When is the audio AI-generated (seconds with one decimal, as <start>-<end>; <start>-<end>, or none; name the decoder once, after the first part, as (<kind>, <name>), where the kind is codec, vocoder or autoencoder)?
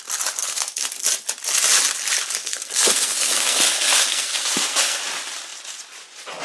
0.4-0.9 (codec, SNAC); 2.4-5.0